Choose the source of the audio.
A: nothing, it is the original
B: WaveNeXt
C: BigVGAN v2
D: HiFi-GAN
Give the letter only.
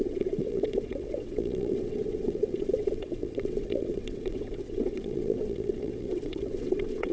B